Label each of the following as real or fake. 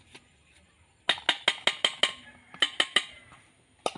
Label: real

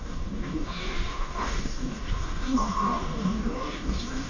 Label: fake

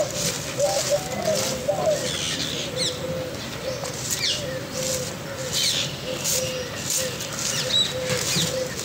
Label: real